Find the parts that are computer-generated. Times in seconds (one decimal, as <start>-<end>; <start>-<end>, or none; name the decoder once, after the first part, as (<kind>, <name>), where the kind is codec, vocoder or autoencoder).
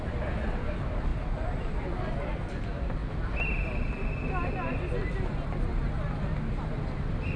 none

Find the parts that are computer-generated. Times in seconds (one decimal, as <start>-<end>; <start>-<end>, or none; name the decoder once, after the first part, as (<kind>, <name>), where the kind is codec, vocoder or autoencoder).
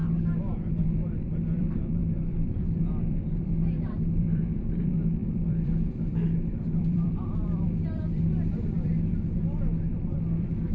0.8-10.7 (vocoder, BigVGAN v2)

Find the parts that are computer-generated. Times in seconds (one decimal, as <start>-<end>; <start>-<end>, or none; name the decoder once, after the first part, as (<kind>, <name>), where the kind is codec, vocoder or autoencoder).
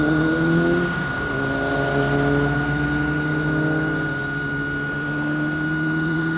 none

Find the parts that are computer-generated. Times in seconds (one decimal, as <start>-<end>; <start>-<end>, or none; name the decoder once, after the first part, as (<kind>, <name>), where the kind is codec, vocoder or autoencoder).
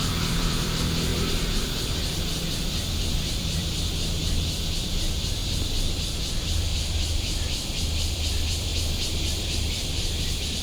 0.0-5.4 (vocoder, BigVGAN v2); 6.2-8.7; 9.6-10.6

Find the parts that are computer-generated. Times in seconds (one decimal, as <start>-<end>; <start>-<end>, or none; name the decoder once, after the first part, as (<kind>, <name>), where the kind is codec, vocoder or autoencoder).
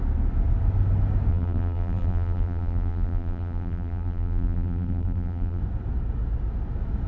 1.3-5.6 (vocoder, BigVGAN v2)